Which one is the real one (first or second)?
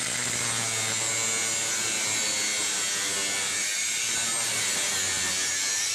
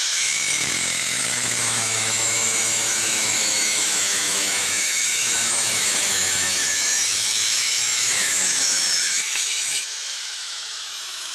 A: first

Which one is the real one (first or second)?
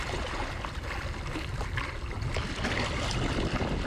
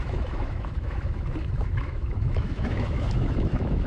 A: first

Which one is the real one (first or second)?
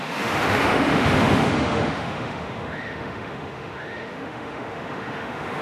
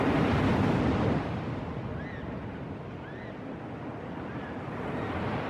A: second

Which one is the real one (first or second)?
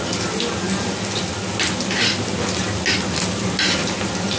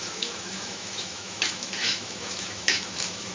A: first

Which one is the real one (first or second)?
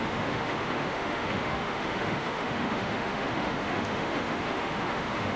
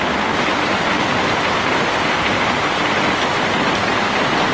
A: second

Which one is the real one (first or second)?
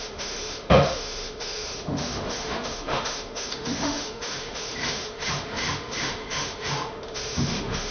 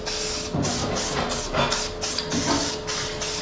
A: second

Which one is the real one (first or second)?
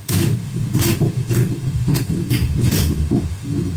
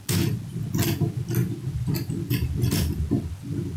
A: second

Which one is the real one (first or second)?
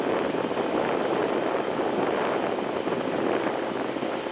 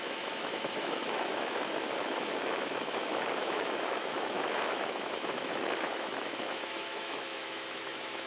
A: first